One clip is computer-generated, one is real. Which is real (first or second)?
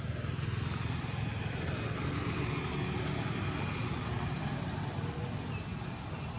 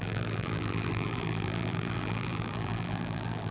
first